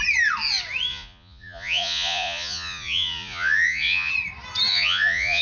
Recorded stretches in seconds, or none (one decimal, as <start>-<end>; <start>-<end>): 0.0-0.9; 4.1-4.7